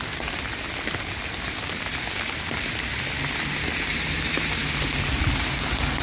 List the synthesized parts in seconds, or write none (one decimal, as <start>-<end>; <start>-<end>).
none